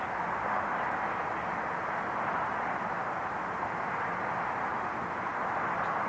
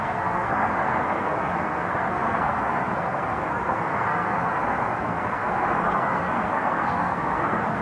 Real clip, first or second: first